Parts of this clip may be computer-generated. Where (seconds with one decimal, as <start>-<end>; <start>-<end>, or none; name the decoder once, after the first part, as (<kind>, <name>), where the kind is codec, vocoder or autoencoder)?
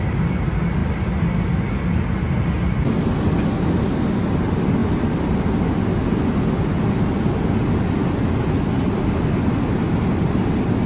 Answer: none